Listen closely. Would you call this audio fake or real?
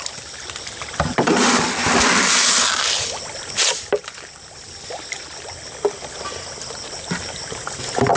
real